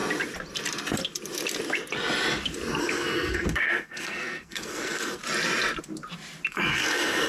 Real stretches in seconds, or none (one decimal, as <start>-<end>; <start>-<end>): 0.0-2.8; 5.2-6.5